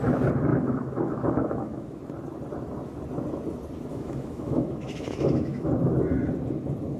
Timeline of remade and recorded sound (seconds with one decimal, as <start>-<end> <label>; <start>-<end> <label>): 0.0-0.5 recorded; 0.5-2.0 remade; 2.0-3.9 recorded; 3.9-5.7 remade; 5.7-7.0 recorded